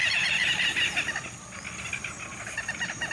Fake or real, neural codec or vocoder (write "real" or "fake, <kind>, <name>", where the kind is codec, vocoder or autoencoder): real